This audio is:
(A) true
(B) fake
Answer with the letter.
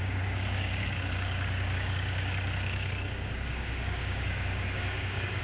B